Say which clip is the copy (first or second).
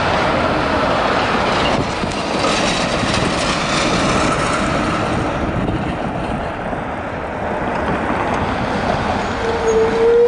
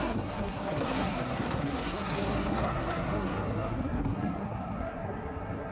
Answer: second